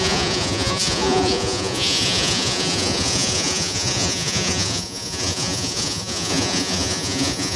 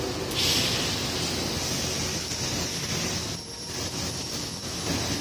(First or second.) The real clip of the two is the second